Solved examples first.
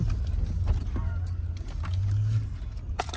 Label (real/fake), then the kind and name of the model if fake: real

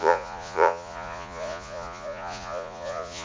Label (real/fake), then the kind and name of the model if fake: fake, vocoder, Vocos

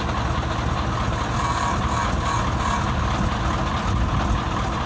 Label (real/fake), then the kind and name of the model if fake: real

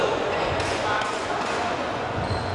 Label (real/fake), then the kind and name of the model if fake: fake, vocoder, Vocos